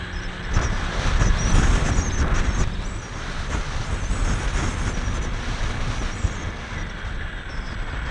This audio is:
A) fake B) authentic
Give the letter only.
B